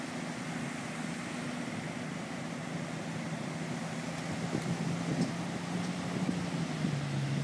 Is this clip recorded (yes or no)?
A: yes